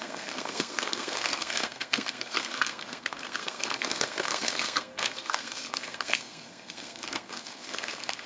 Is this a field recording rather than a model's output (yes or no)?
no